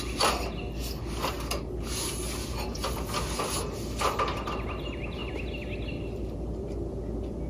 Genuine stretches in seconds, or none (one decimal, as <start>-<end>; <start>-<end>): 0.0-7.5